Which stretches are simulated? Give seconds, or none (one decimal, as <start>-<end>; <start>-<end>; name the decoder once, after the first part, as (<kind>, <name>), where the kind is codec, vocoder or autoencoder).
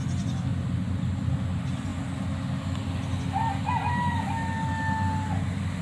none